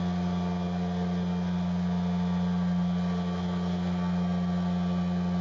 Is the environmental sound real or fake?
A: real